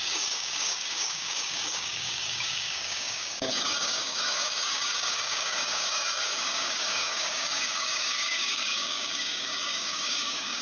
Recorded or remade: remade